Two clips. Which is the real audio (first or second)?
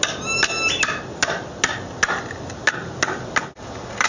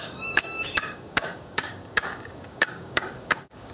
first